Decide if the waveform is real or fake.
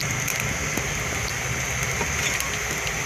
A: real